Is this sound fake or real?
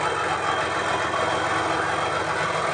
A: real